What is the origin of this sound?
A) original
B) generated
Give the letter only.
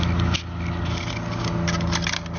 A